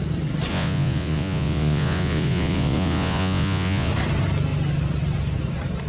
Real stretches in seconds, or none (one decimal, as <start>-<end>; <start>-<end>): 0.0-0.5; 3.9-5.9